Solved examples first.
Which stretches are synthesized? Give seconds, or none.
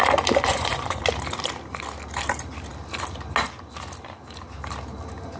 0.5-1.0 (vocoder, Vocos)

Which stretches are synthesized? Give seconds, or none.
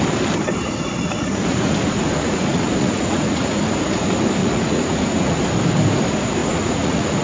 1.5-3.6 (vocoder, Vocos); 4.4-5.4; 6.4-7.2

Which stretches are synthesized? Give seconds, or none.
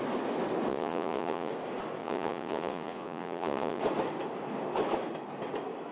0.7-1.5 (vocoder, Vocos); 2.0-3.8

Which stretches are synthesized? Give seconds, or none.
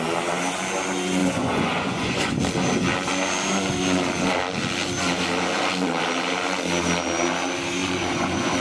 1.2-2.4 (vocoder, Vocos); 7.8-8.6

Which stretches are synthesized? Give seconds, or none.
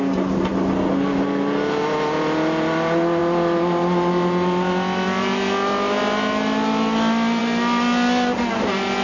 none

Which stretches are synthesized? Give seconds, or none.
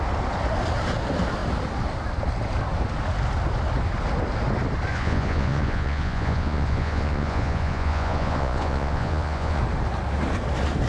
4.9-9.6 (vocoder, Vocos)